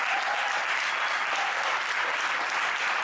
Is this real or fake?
real